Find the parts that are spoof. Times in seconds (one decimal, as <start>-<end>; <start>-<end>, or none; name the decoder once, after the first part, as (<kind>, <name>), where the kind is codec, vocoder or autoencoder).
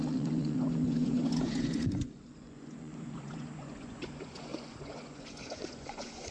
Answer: 0.0-6.3 (vocoder, Vocos)